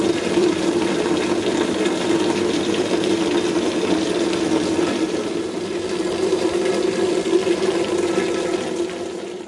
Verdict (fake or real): fake